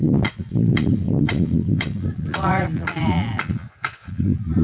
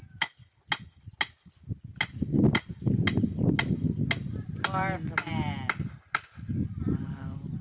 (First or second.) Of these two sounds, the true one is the second